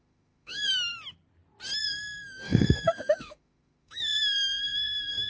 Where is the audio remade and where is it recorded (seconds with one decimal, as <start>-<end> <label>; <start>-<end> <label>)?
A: 0.0-0.7 remade; 0.7-1.8 recorded; 1.8-5.3 remade